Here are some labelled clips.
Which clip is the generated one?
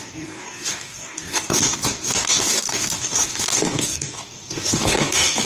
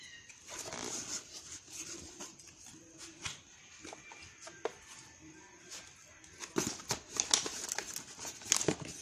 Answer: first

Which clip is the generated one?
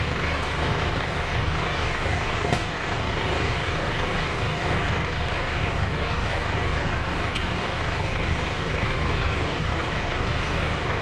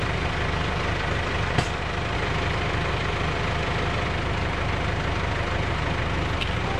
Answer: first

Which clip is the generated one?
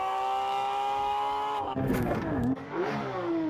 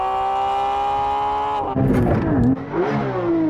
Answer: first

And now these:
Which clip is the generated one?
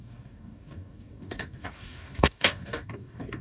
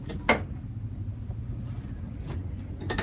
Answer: first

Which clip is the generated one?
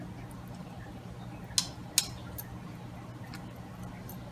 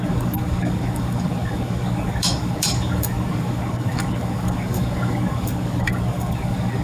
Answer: second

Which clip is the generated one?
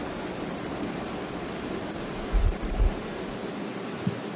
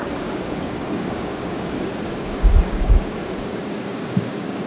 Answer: second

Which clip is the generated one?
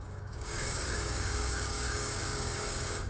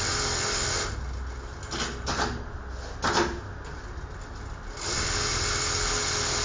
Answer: first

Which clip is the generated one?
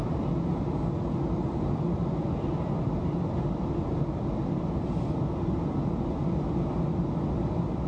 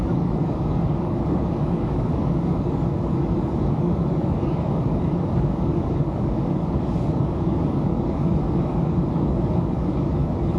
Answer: second